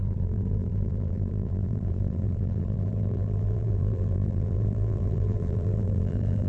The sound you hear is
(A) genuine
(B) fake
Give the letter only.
B